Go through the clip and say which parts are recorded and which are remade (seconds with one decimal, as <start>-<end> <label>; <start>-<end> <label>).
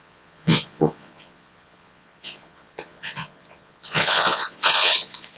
0.0-5.4 remade